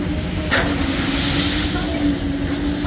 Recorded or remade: recorded